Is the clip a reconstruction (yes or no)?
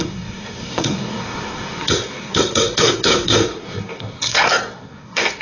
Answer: yes